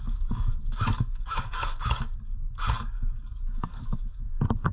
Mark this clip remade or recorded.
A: remade